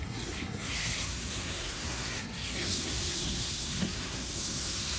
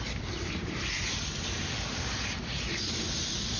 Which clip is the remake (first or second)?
first